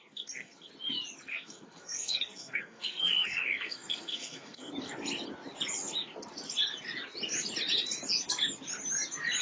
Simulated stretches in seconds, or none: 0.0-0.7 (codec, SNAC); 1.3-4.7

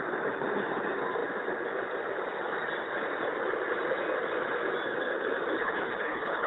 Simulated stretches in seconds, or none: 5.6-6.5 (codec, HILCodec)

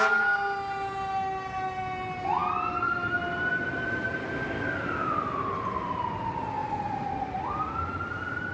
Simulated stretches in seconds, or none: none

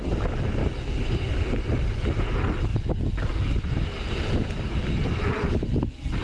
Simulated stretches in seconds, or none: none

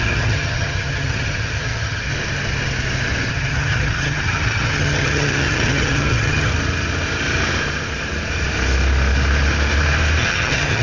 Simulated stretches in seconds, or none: 0.0-2.1 (vocoder, HiFi-GAN); 3.3-6.5; 10.2-10.8

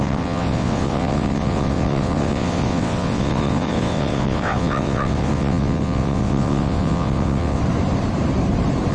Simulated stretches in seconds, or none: 0.0-7.6 (vocoder, WaveNeXt)

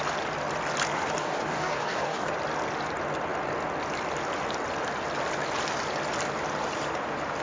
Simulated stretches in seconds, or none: 1.2-2.3 (codec, DAC)